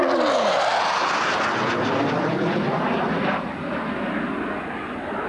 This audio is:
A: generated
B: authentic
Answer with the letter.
B